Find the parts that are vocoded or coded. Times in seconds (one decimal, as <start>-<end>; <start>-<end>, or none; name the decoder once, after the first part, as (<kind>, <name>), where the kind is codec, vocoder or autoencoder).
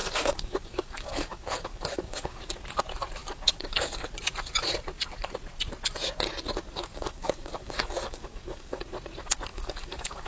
0.0-2.5 (codec, DAC); 3.2-4.1; 6.9-8.8; 9.5-10.3